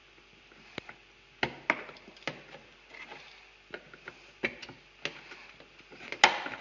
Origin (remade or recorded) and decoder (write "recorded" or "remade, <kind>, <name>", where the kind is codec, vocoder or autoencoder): recorded